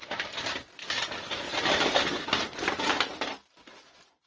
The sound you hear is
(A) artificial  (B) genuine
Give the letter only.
B